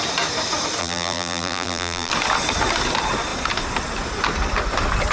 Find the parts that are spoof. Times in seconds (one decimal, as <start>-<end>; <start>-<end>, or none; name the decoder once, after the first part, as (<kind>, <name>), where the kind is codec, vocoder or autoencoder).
0.8-2.1 (vocoder, BigVGAN v2)